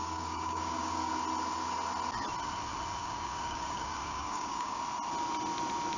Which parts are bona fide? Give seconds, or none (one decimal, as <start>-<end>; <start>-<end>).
1.1-3.0; 4.8-6.0